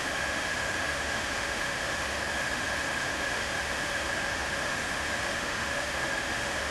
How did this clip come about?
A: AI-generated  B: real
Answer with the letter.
A